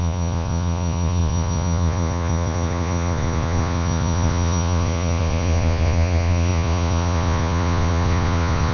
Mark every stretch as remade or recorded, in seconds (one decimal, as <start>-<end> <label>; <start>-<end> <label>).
0.0-8.7 remade